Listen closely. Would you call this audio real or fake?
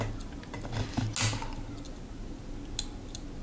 real